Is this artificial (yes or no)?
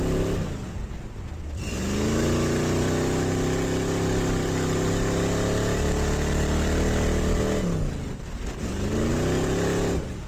no